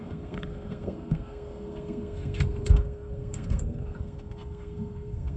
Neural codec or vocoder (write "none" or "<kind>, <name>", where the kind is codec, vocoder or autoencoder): codec, SNAC